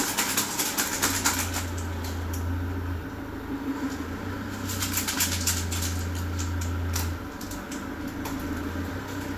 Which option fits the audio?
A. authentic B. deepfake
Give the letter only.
A